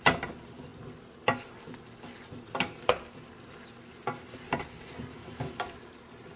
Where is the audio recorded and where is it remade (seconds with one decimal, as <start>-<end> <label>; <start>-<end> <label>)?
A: 0.0-5.1 recorded; 5.1-5.6 remade; 5.6-6.4 recorded